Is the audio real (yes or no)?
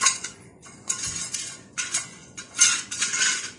no